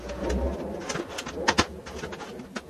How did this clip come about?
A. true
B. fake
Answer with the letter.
A